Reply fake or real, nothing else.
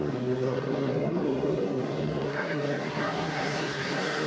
fake